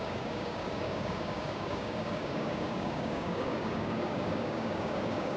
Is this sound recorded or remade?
remade